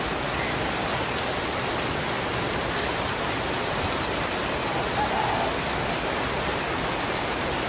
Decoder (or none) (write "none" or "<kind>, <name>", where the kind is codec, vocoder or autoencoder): none